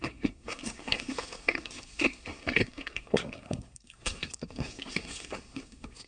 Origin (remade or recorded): remade